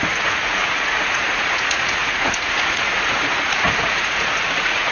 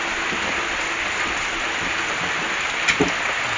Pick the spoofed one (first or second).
first